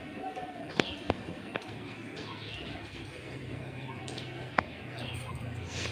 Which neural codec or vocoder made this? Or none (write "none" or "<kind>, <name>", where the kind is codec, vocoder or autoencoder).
codec, SNAC